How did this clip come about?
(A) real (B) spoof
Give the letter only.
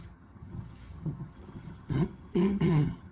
B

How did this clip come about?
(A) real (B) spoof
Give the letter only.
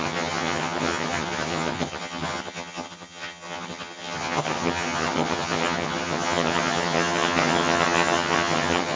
B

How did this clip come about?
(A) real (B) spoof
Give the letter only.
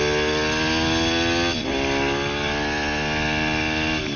A